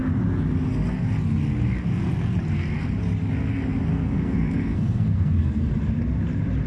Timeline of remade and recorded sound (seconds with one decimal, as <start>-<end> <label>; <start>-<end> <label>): 0.0-3.9 recorded; 3.9-5.7 remade; 5.7-6.7 recorded